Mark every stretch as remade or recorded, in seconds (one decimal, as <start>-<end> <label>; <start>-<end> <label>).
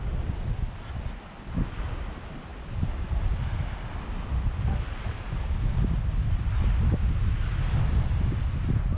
0.0-9.0 recorded